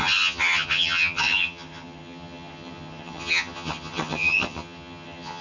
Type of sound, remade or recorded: remade